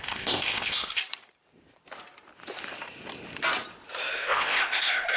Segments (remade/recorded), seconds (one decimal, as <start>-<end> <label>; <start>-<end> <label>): 0.0-1.0 remade; 1.0-4.1 recorded; 4.1-5.2 remade

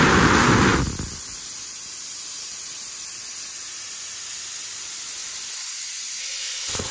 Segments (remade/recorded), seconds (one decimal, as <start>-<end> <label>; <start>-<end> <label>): 0.0-6.2 recorded; 6.2-6.9 remade

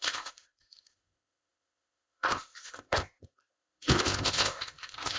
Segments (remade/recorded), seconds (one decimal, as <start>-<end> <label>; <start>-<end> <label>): 0.0-5.2 remade